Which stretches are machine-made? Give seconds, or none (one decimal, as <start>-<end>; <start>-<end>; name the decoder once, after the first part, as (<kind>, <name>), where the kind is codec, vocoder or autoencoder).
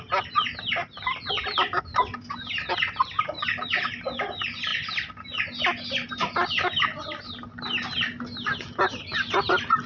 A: none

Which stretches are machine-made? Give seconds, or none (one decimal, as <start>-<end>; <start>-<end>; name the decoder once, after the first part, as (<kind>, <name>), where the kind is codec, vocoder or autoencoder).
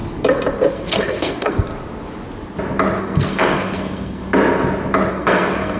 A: 0.7-1.7 (codec, SNAC); 3.0-4.2; 5.1-5.8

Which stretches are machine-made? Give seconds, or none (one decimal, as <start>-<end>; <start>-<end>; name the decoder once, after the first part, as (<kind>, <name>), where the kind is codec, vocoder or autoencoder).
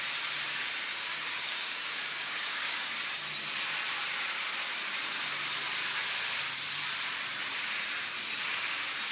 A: 0.9-2.9 (codec, DAC)